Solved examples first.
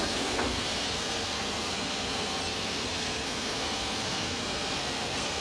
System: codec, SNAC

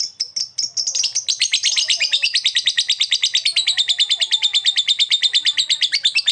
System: none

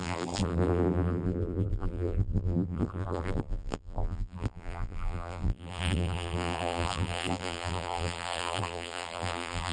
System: vocoder, BigVGAN v2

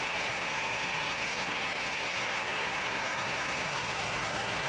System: codec, SNAC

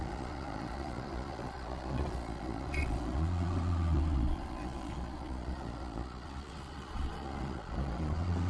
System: vocoder, Vocos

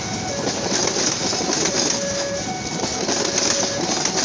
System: none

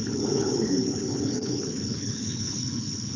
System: codec, HILCodec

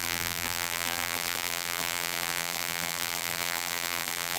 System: vocoder, BigVGAN v2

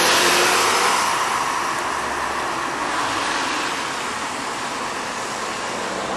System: none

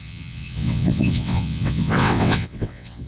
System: vocoder, WaveNeXt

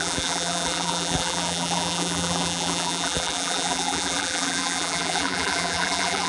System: vocoder, BigVGAN v2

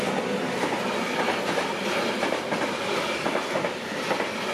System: none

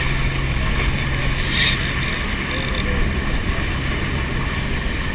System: none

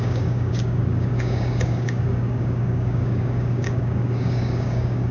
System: codec, DAC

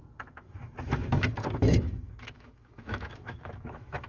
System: autoencoder, DAC-VAE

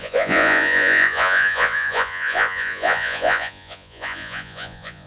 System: vocoder, Vocos